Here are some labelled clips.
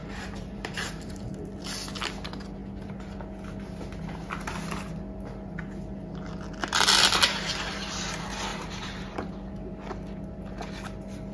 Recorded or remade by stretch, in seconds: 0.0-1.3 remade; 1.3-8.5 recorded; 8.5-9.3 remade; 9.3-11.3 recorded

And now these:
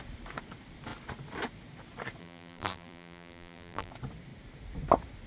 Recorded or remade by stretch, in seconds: 0.0-2.2 recorded; 2.2-3.9 remade; 3.9-5.3 recorded

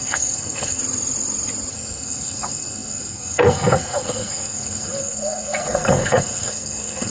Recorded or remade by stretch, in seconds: 0.0-0.8 remade; 0.8-1.7 recorded; 1.7-7.1 remade

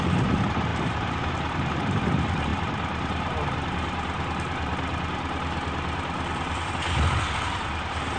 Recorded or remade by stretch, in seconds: 0.0-0.7 recorded; 0.7-1.3 remade; 1.3-8.2 recorded